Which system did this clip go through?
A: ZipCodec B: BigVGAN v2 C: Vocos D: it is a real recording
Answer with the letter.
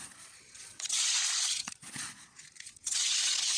C